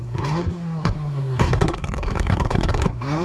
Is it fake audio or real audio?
fake